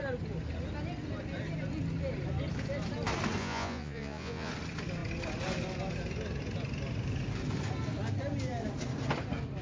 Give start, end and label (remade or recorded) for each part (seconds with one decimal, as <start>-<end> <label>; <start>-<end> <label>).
0.0-3.4 recorded; 3.4-4.5 remade; 4.5-9.6 recorded